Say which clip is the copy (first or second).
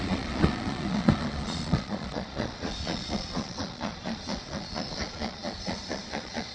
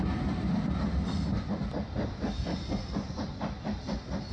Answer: first